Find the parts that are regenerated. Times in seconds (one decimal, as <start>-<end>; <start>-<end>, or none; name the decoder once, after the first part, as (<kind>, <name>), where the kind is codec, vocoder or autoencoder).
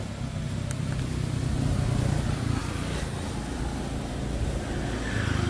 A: none